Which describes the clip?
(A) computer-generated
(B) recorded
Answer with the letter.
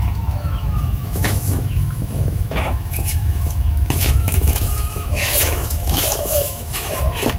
A